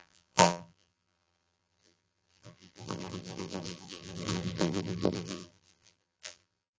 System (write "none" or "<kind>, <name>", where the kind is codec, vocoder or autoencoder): vocoder, BigVGAN v2